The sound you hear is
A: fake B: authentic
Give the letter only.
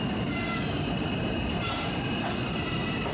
A